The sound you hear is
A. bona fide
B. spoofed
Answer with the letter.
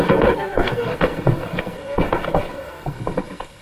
B